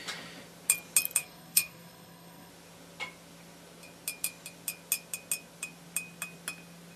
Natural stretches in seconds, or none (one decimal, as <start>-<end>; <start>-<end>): 0.0-1.2; 2.5-7.0